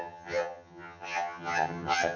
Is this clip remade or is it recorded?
remade